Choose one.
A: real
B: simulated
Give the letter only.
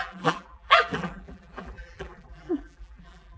B